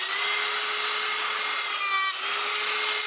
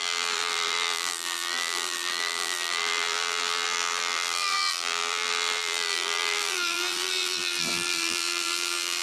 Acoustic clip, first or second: first